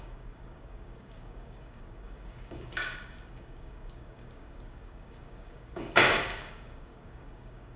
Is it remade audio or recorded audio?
remade